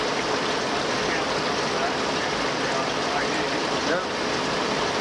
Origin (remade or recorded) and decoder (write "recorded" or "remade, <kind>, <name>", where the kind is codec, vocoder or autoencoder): remade, vocoder, BigVGAN v2